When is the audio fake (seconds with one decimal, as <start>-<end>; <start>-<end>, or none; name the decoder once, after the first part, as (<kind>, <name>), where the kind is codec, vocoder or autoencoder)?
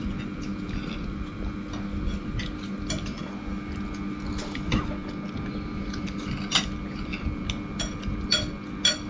none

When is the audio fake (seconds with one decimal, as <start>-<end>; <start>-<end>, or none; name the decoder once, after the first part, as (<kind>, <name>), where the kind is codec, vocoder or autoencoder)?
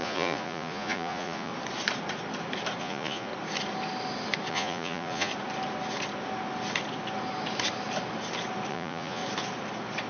0.0-1.5 (vocoder, Vocos); 2.8-3.3; 4.5-5.3; 8.7-9.2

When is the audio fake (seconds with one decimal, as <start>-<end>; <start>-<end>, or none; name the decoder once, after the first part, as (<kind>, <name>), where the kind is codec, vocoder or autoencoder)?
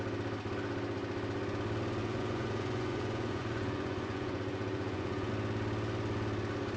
2.0-5.3 (vocoder, Vocos)